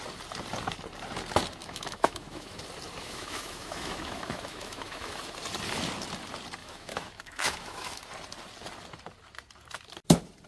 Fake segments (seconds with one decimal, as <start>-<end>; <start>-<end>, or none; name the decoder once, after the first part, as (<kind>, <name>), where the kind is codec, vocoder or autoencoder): 1.6-2.6 (autoencoder, DAC-VAE); 3.0-5.2; 6.6-8.0